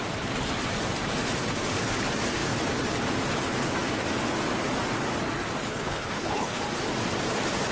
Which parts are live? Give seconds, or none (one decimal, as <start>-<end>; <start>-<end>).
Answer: 0.0-5.6; 6.6-7.7